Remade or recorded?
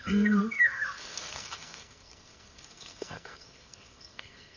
remade